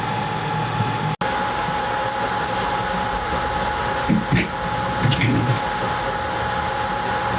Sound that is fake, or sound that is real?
real